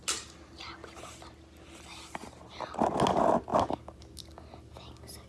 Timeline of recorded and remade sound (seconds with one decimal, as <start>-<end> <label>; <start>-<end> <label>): 0.0-5.3 recorded